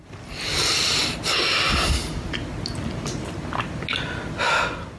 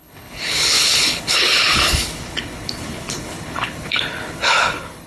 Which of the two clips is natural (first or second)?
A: first